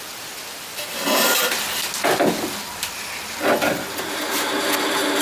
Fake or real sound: real